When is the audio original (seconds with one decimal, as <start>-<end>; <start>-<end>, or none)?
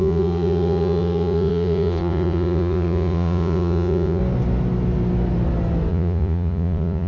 4.2-5.9